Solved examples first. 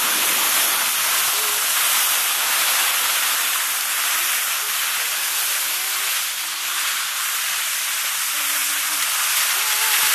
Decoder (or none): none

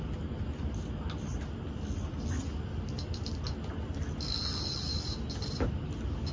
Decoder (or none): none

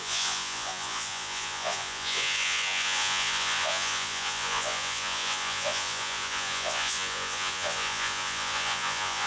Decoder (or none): vocoder, Vocos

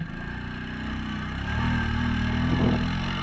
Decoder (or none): none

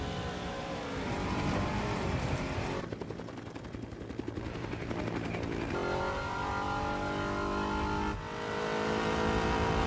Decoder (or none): none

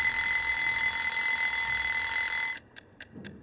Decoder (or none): none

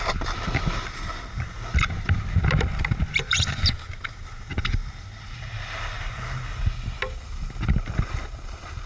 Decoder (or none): none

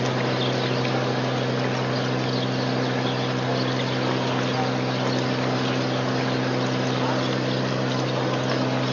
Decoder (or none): none